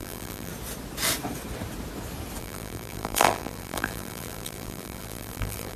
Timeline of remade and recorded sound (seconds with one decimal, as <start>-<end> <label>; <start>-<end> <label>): 0.0-0.5 remade; 0.5-2.4 recorded; 2.4-5.8 remade